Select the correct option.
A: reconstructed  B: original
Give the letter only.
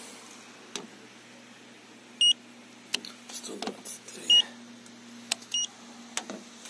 B